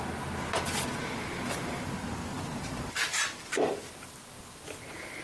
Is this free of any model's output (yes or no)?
yes